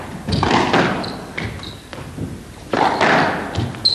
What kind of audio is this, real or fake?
real